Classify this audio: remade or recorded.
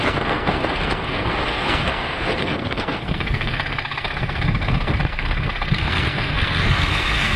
remade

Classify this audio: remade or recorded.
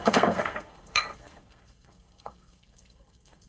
remade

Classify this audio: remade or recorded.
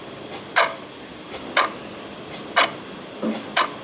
recorded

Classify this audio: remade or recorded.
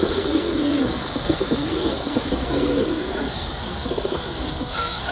remade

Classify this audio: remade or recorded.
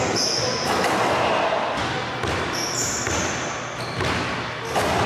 recorded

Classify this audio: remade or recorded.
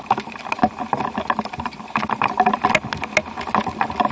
recorded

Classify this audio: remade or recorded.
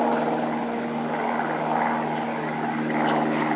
recorded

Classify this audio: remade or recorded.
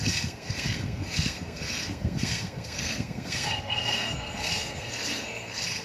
remade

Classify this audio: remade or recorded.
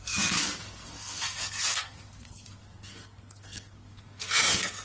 remade